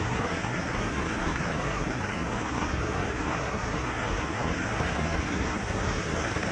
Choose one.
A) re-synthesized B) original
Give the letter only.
A